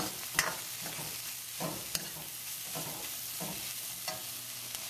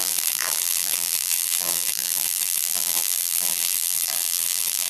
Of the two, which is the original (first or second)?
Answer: first